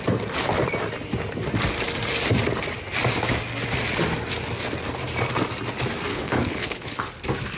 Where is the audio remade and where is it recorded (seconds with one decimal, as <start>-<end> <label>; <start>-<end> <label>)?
0.0-6.1 recorded; 6.1-7.1 remade; 7.1-7.6 recorded